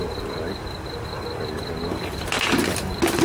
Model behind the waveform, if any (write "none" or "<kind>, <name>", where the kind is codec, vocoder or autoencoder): none